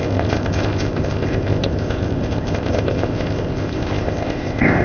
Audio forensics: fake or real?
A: fake